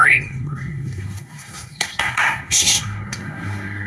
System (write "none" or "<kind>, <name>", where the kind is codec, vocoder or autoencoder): codec, SNAC